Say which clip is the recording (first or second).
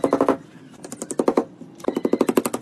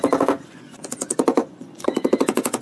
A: first